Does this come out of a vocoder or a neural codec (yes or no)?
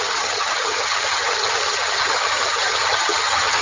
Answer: yes